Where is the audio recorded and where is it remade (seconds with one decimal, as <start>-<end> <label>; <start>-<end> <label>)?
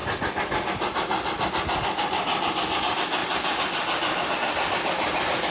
0.0-5.5 recorded